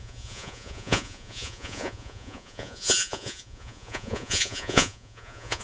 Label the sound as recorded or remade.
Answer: remade